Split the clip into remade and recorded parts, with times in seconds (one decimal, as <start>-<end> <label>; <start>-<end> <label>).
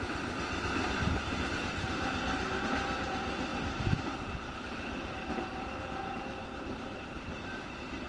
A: 0.0-3.5 recorded; 3.5-8.1 remade